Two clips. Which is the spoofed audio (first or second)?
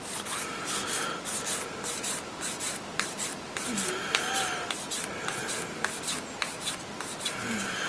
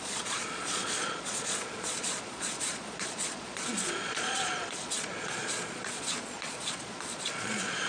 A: second